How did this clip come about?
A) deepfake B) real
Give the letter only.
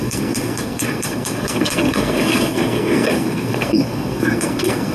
A